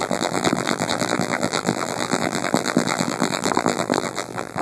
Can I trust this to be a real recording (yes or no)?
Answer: no